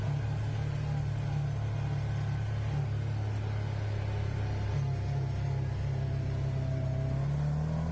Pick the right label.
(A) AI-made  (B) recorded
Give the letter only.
B